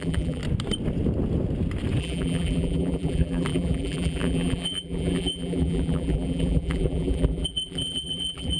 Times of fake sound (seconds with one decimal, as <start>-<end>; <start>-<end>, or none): 0.0-0.4; 2.0-8.6